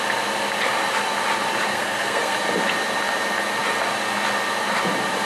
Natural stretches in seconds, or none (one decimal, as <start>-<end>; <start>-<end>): 0.0-1.7; 2.4-5.2